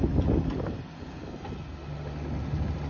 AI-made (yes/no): no